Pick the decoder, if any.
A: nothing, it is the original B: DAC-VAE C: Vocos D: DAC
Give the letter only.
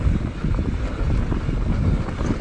A